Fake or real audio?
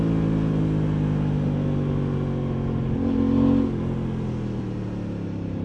real